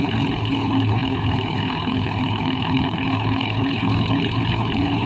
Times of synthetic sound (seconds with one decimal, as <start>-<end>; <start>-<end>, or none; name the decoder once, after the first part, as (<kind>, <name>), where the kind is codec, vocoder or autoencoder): 0.0-5.1 (codec, HILCodec)